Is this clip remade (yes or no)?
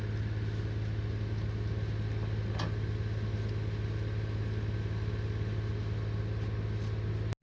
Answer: no